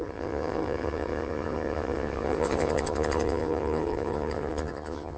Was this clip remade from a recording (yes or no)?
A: yes